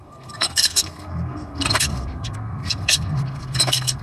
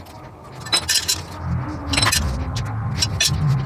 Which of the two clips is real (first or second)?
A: second